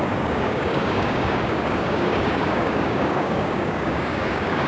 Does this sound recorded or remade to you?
remade